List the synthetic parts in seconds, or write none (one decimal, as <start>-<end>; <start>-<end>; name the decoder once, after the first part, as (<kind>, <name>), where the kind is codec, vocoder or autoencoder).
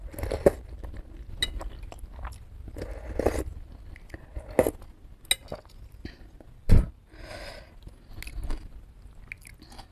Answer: 6.6-7.5 (vocoder, BigVGAN v2)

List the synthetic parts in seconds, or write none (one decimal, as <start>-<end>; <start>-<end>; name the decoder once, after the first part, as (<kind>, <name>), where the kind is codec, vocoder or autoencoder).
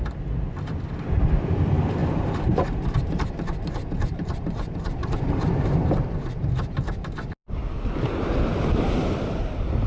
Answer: 2.0-6.1 (vocoder, BigVGAN v2)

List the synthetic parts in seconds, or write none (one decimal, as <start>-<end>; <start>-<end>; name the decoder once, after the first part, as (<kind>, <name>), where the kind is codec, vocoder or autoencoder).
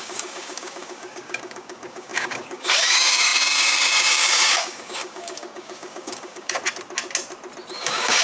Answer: 0.0-6.6 (codec, DAC); 7.7-8.2